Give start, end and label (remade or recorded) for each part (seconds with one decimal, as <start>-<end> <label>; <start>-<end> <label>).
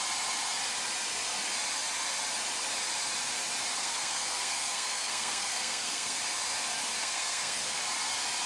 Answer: 0.0-3.8 recorded; 3.8-6.2 remade; 6.2-7.0 recorded; 7.0-7.8 remade; 7.8-8.5 recorded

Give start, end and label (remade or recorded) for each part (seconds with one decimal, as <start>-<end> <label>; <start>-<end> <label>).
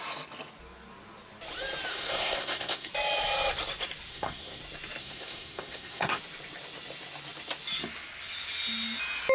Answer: 0.0-1.9 recorded; 1.9-2.9 remade; 2.9-4.1 recorded; 4.1-4.6 remade; 4.6-5.0 recorded; 5.0-6.2 remade; 6.2-9.3 recorded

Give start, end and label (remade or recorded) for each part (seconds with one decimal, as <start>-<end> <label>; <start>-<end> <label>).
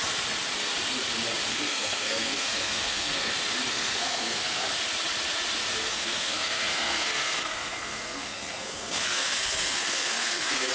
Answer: 0.0-1.5 recorded; 1.5-3.3 remade; 3.3-3.7 recorded; 3.7-4.7 remade; 4.7-5.8 recorded; 5.8-10.7 remade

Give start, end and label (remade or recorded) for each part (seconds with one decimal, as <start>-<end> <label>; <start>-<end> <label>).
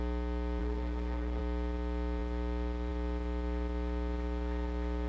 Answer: 0.0-0.6 recorded; 0.6-1.4 remade; 1.4-5.1 recorded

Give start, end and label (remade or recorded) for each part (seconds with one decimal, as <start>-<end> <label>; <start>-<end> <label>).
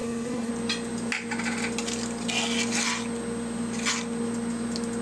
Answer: 0.0-0.5 remade; 0.5-5.0 recorded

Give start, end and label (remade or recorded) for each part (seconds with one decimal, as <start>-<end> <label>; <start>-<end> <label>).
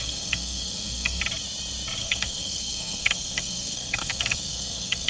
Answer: 0.0-1.2 remade; 1.2-2.0 recorded; 2.0-5.1 remade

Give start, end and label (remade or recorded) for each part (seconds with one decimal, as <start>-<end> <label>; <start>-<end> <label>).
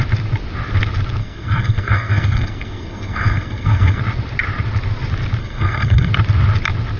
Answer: 0.0-1.2 recorded; 1.2-4.0 remade; 4.0-5.4 recorded; 5.4-6.1 remade; 6.1-7.0 recorded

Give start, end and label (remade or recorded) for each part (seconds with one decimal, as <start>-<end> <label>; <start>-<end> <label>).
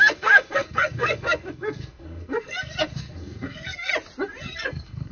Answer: 0.0-3.9 remade; 3.9-4.4 recorded; 4.4-5.1 remade